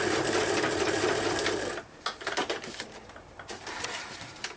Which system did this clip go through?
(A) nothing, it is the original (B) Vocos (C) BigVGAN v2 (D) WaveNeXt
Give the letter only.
C